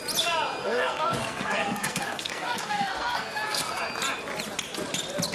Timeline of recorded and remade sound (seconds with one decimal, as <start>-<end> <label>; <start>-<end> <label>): 0.0-0.6 recorded; 0.6-3.8 remade; 3.8-5.3 recorded